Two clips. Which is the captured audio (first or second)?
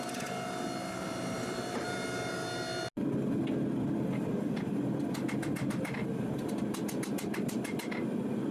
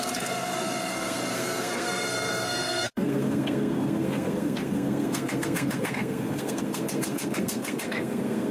first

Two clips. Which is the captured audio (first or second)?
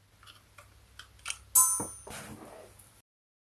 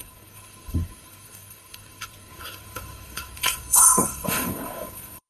first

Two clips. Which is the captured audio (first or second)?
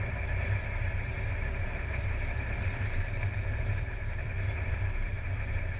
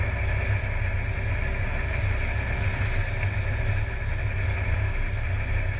second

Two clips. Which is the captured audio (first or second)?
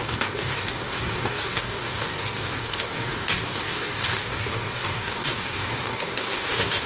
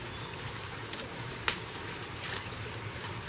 second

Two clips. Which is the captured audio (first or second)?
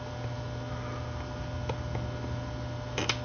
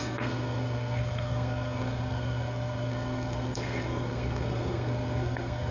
first